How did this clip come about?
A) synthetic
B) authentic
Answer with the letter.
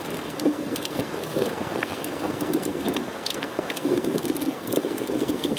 A